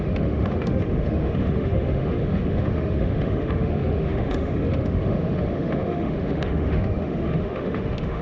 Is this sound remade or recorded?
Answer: remade